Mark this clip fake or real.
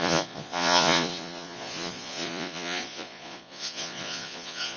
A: fake